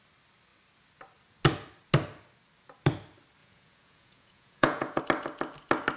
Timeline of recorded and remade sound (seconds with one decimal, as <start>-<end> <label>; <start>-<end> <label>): 0.0-3.4 recorded; 3.4-5.0 remade; 5.0-6.0 recorded